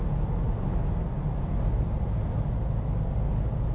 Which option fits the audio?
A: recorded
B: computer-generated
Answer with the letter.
A